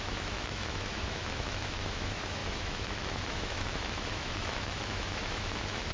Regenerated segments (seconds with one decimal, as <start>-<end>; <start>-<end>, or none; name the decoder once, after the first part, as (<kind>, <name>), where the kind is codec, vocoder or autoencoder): 0.0-5.9 (autoencoder, DAC-VAE)

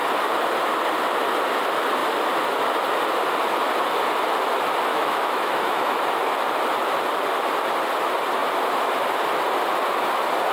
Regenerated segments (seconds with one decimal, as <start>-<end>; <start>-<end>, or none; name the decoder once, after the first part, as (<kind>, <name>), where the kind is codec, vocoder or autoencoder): 4.9-6.0 (autoencoder, DAC-VAE)

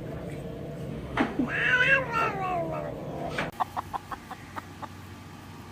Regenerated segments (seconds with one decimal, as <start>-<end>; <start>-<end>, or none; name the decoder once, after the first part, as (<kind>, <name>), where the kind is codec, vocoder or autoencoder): 0.9-1.5 (autoencoder, DAC-VAE)

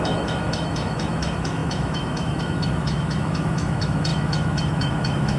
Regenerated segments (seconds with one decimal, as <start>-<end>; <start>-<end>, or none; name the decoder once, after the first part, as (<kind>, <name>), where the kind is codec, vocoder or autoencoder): 0.0-5.4 (autoencoder, DAC-VAE)